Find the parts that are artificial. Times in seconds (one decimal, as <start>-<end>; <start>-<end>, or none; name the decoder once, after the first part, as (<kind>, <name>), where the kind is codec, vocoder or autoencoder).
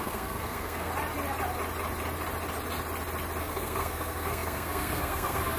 0.0-0.9 (codec, SNAC); 3.4-5.6